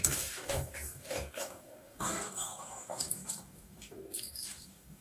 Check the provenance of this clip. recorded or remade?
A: remade